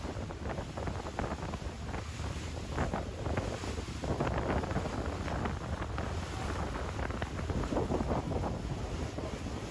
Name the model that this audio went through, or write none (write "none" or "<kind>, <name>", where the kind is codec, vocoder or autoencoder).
none